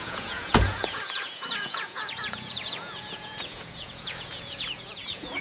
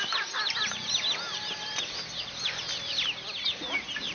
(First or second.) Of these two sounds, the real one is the second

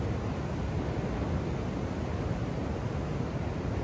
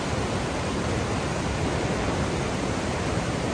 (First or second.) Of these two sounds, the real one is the first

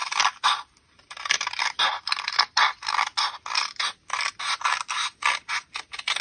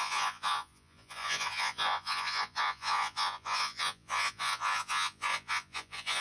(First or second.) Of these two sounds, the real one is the first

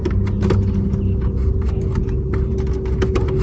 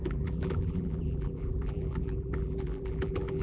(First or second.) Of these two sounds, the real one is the first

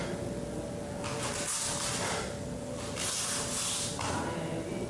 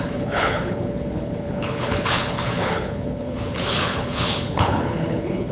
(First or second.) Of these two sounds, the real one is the first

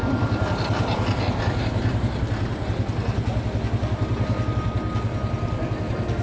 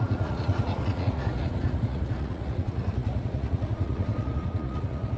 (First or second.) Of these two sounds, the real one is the first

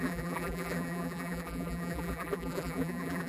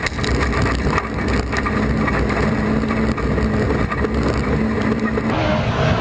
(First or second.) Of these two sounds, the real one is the second